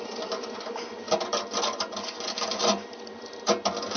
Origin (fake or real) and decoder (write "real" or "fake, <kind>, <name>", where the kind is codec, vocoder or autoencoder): fake, vocoder, BigVGAN v2